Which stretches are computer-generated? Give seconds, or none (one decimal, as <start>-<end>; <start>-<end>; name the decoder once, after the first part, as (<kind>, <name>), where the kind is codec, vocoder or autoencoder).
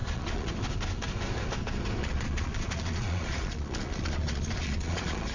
0.0-0.5 (vocoder, Vocos); 2.0-5.3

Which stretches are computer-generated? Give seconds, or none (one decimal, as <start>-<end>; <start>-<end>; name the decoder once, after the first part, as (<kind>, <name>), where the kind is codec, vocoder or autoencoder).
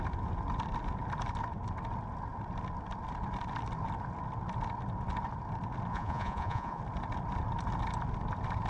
5.9-6.8 (vocoder, Vocos)